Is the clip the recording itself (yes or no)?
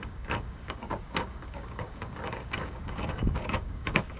no